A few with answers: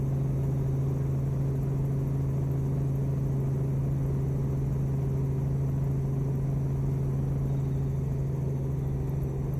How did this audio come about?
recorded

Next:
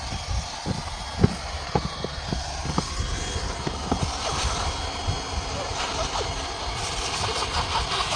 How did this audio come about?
recorded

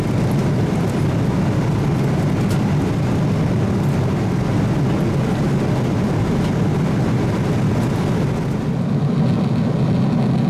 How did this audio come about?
recorded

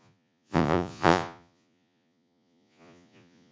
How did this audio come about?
remade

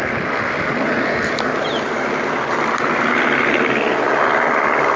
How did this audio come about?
recorded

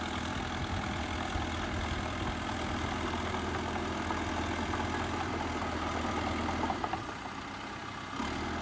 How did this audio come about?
recorded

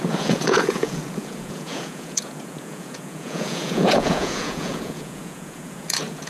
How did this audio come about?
remade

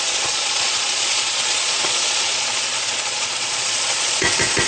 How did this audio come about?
remade